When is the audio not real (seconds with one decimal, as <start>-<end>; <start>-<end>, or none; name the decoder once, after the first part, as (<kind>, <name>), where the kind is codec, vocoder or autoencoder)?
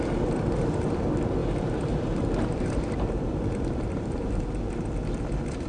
1.4-4.7 (vocoder, BigVGAN v2)